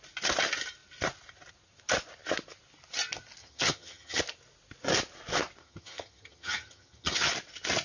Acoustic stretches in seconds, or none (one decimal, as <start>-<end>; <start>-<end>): 0.0-3.4; 4.2-5.6; 7.3-7.8